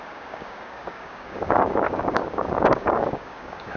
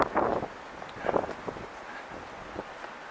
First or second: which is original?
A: second